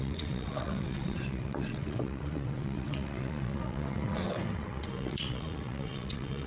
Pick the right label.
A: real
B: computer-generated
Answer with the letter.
B